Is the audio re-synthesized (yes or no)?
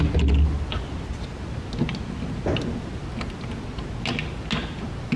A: no